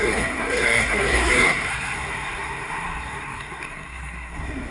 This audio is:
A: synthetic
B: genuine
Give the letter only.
A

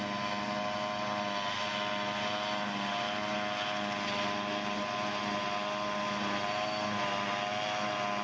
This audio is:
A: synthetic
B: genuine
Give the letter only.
B